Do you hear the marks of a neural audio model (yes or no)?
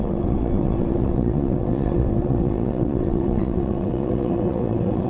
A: yes